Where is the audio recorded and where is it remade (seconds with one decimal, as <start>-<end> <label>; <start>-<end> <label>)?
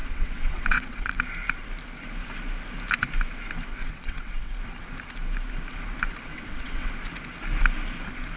0.0-1.2 remade; 1.2-3.7 recorded; 3.7-4.5 remade; 4.5-6.3 recorded; 6.3-6.9 remade; 6.9-8.4 recorded